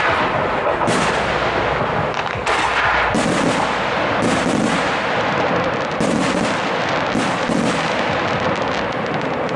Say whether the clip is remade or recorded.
recorded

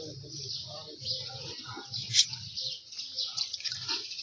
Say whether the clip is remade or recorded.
recorded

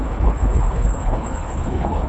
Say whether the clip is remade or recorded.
remade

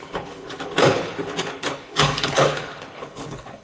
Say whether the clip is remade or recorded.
remade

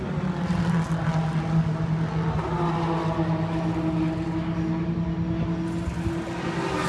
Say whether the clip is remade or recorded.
recorded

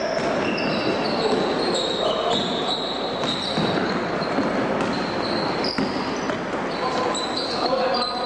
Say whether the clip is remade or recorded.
recorded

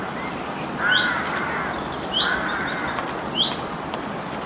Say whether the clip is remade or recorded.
recorded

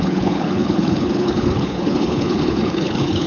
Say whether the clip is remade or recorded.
remade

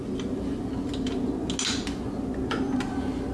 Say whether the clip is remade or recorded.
recorded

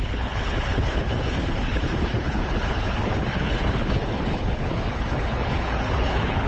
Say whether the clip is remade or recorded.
remade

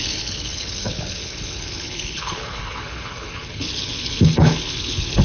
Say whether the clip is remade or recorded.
remade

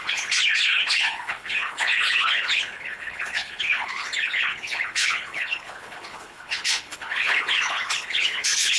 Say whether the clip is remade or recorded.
remade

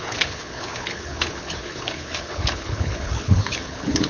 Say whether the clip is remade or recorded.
remade